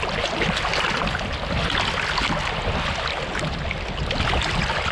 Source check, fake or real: real